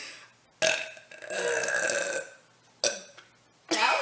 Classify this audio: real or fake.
real